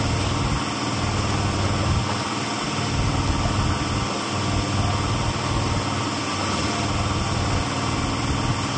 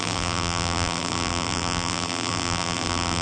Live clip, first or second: first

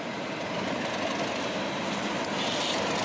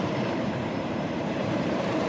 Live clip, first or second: first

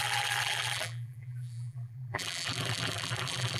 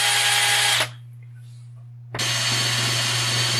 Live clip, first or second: second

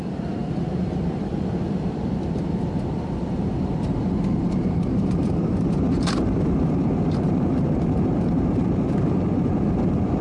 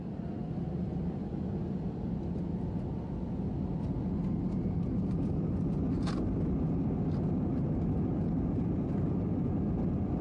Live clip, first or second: second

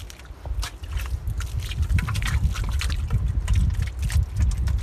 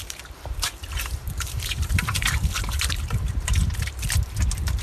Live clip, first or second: first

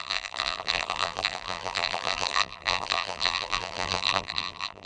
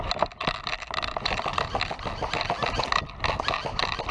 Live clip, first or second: second